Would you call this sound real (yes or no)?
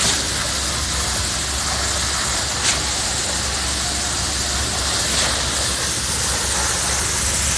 yes